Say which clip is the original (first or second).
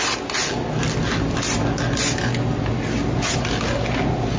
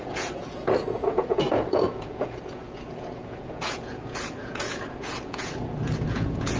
first